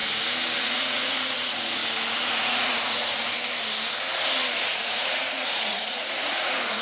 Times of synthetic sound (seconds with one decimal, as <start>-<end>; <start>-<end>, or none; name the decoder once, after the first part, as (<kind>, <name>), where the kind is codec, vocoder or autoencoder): 0.6-1.8 (vocoder, Vocos); 2.3-3.2; 4.5-6.8